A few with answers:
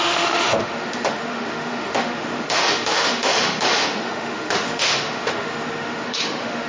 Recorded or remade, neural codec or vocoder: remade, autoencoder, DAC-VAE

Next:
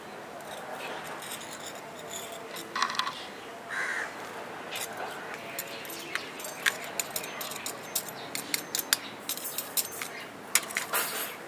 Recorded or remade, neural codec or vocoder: recorded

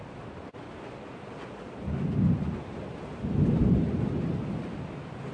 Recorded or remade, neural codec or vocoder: recorded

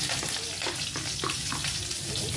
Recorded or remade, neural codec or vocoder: recorded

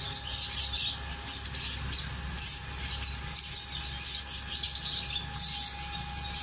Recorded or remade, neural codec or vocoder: recorded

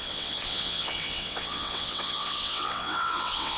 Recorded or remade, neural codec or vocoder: remade, vocoder, WaveNeXt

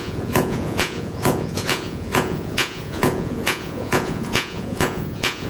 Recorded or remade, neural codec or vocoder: remade, vocoder, Vocos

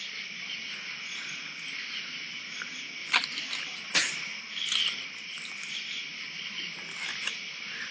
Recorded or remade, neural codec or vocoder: recorded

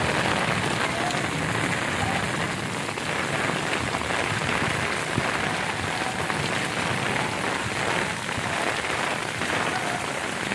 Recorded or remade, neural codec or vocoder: recorded